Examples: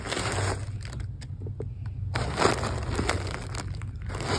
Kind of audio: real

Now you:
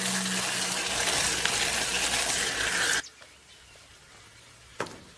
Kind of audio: real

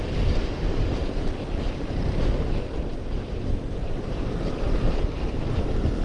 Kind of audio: fake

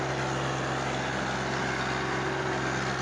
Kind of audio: real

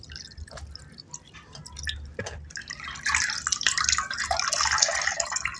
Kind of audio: real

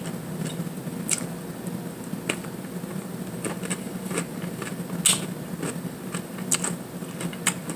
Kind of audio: real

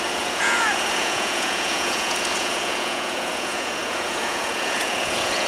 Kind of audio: fake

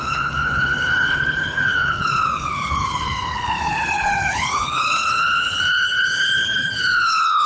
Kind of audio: fake